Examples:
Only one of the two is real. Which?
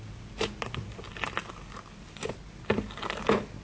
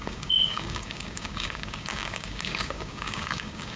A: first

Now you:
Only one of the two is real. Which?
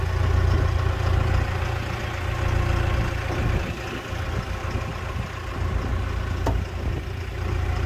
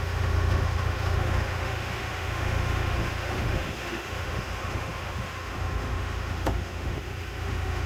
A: first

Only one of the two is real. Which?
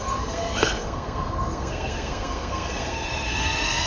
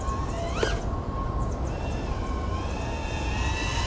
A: second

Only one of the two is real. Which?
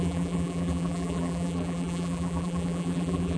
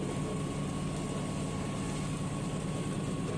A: second